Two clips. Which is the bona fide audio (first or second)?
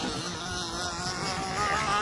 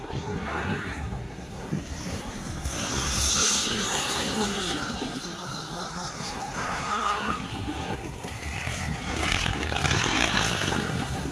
first